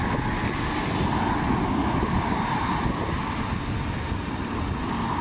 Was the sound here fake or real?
real